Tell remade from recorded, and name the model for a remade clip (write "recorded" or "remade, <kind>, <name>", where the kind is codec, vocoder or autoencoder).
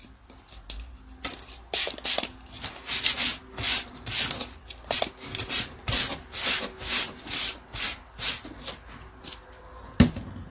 recorded